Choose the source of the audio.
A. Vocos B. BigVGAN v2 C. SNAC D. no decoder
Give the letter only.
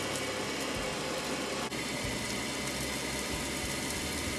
D